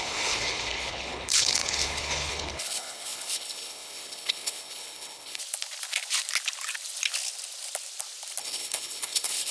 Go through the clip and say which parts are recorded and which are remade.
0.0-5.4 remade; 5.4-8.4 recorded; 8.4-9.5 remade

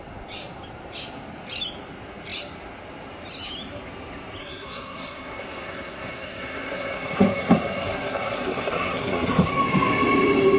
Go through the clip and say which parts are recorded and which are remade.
0.0-4.4 recorded; 4.4-9.5 remade; 9.5-10.6 recorded

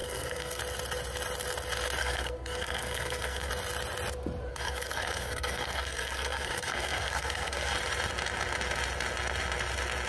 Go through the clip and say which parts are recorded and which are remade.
0.0-0.6 remade; 0.6-2.0 recorded; 2.0-3.5 remade; 3.5-4.5 recorded; 4.5-7.7 remade; 7.7-10.1 recorded

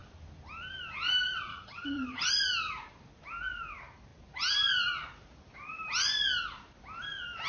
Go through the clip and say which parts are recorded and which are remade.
0.0-1.5 recorded; 1.5-2.3 remade; 2.3-7.5 recorded

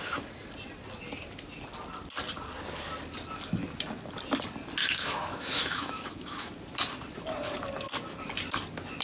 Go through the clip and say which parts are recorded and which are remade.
0.0-4.8 recorded; 4.8-6.5 remade; 6.5-9.0 recorded

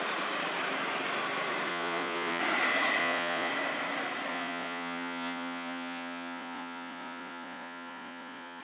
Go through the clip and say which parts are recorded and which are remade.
0.0-1.7 recorded; 1.7-2.4 remade; 2.4-3.0 recorded; 3.0-3.5 remade; 3.5-4.3 recorded; 4.3-8.6 remade

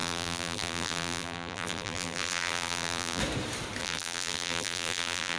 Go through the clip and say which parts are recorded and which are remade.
0.0-3.2 remade; 3.2-3.8 recorded; 3.8-5.4 remade

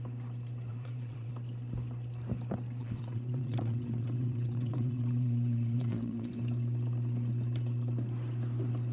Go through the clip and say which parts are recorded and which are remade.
0.0-0.7 recorded; 0.7-1.3 remade; 1.3-2.8 recorded; 2.8-6.3 remade; 6.3-8.9 recorded